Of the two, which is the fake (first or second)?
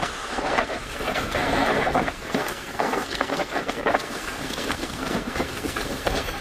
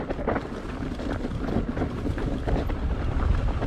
first